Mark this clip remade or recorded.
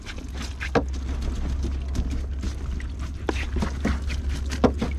recorded